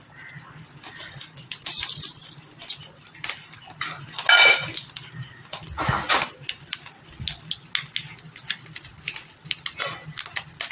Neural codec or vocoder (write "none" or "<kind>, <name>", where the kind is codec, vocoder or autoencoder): none